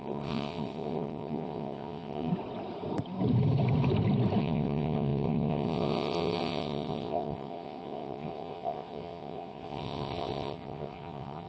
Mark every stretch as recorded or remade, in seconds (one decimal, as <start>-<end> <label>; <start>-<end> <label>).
0.0-2.3 remade; 2.3-4.4 recorded; 4.4-11.5 remade